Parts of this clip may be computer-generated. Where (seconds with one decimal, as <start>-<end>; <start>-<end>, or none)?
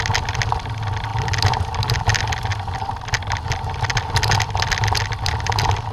none